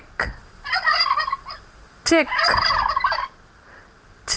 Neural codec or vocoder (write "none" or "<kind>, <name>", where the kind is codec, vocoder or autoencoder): none